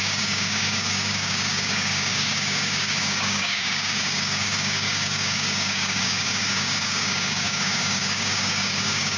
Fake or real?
fake